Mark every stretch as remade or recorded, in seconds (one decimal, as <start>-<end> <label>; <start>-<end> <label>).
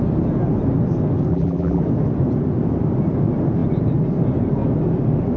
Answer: 0.0-1.3 recorded; 1.3-1.8 remade; 1.8-5.4 recorded